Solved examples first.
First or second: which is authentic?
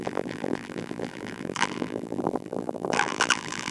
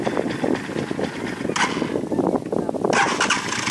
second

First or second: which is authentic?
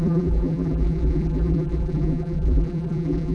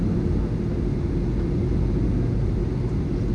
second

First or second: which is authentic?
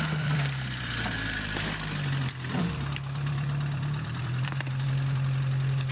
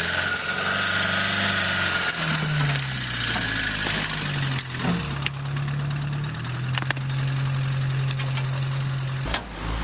second